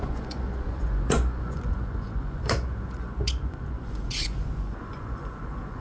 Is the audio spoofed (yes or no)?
yes